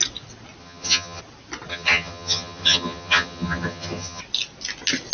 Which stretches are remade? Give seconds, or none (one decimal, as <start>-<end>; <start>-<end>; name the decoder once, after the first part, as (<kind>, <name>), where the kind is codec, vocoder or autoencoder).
0.6-1.2 (vocoder, HiFi-GAN); 1.7-4.2